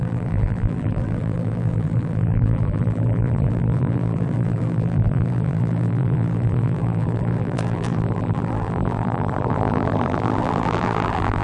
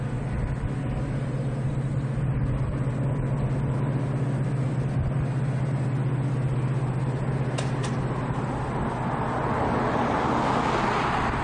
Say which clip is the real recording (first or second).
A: second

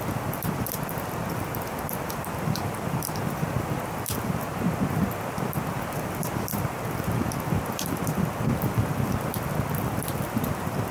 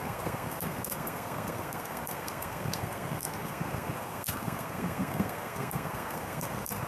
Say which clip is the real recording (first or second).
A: first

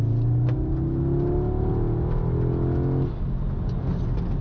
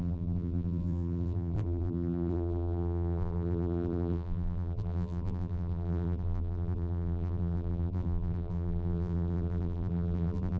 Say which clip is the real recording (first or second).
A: first